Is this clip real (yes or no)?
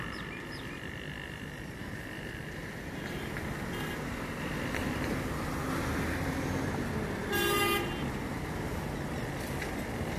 yes